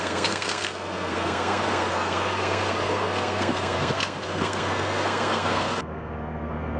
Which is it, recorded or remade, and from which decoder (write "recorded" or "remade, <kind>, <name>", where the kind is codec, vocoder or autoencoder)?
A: remade, codec, SNAC